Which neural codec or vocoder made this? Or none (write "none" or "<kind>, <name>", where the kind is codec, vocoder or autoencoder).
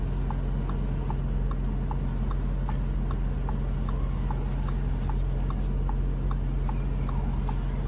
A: none